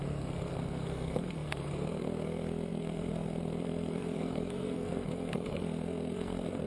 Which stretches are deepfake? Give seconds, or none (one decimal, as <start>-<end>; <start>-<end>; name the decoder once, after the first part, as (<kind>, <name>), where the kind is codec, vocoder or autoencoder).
0.0-6.7 (codec, SNAC)